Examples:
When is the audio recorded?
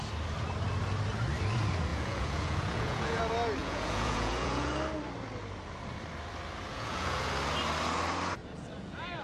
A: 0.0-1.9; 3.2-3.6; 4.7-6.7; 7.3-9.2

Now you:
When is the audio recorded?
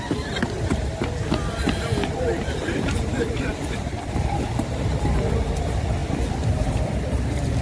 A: 0.0-7.6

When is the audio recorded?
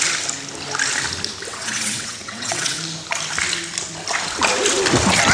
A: 0.0-1.5; 2.8-5.3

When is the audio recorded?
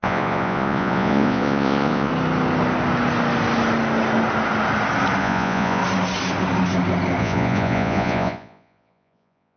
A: 2.1-5.2; 5.8-7.2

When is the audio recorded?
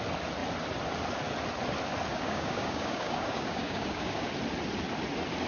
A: 0.0-2.1; 4.3-5.5